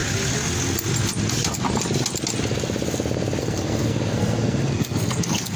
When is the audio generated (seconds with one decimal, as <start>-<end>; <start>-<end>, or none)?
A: 3.4-5.6